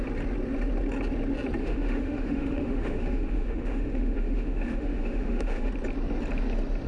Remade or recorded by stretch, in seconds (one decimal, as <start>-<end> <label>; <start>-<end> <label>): 0.0-1.6 recorded; 1.6-5.7 remade; 5.7-6.9 recorded